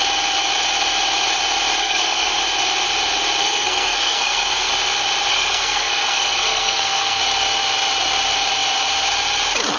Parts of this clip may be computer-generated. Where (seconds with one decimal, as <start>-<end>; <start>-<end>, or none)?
1.8-2.4; 3.4-4.7; 5.3-7.2